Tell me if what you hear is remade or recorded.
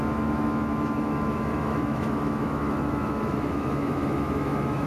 remade